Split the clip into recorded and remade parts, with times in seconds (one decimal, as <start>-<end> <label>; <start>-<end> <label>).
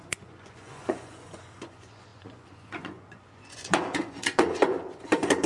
0.0-5.5 remade